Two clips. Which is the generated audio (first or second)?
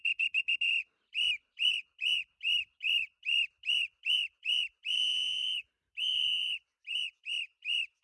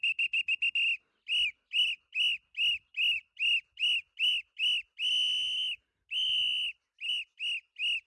first